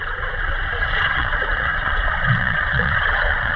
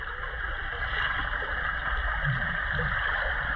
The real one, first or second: second